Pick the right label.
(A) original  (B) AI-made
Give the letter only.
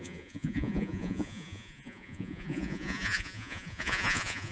B